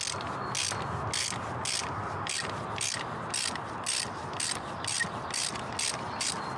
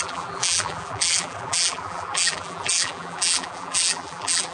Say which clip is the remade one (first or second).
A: second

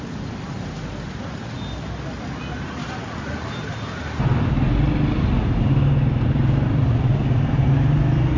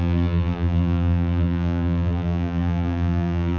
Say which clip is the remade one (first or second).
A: second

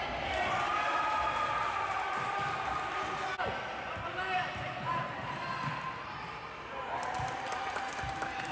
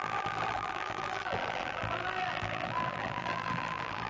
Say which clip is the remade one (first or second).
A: second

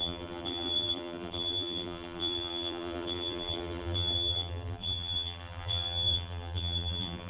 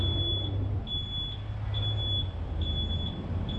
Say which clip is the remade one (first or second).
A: first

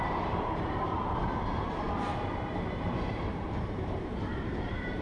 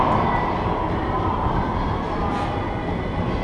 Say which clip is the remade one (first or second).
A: first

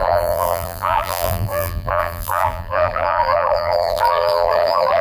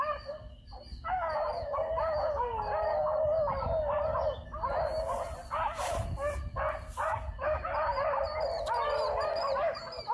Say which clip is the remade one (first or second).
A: first